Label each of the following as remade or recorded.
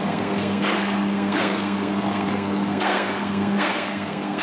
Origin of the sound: remade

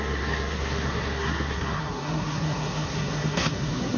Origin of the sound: remade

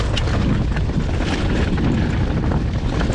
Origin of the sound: recorded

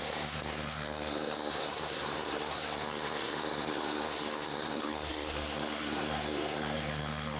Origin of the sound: remade